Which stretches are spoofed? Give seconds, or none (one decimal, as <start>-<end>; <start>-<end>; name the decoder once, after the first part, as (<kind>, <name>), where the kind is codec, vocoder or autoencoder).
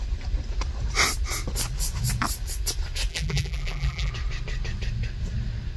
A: 3.1-4.1 (vocoder, BigVGAN v2)